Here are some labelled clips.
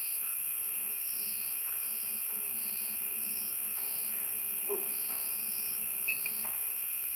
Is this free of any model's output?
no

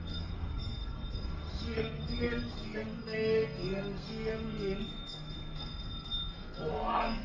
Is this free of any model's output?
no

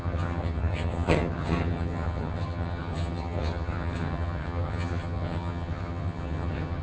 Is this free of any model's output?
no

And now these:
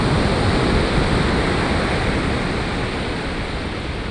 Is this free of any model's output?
yes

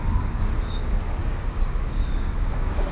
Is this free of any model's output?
no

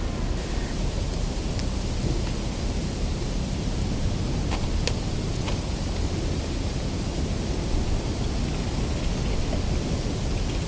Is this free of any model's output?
yes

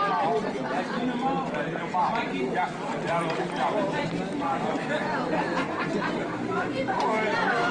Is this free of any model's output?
no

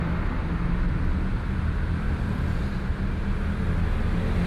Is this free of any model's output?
yes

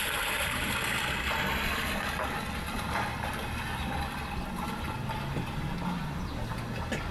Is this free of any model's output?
yes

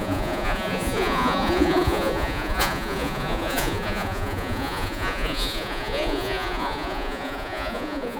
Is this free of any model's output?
no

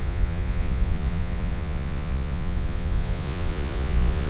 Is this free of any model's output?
no